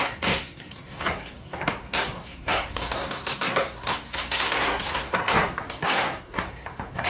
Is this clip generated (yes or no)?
yes